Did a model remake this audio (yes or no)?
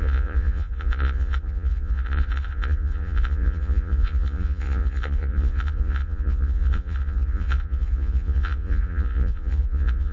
yes